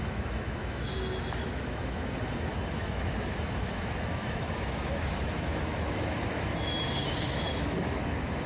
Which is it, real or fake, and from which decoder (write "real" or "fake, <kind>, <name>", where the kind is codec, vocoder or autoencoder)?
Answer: fake, autoencoder, DAC-VAE